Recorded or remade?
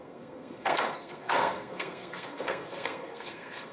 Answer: remade